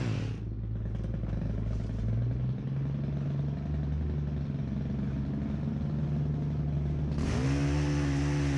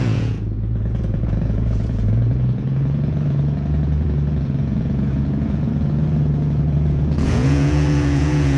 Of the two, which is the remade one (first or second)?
second